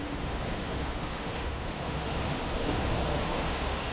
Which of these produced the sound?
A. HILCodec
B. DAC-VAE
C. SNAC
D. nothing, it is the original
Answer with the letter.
B